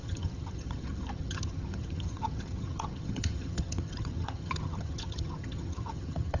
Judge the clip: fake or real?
fake